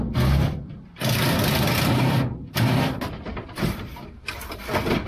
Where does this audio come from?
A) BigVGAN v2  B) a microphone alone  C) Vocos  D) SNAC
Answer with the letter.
A